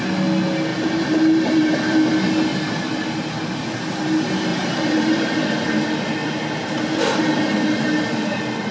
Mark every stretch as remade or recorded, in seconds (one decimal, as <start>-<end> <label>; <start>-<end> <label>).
0.0-0.7 recorded; 0.7-1.7 remade; 1.7-4.5 recorded; 4.5-5.3 remade; 5.3-6.2 recorded; 6.2-7.2 remade; 7.2-8.7 recorded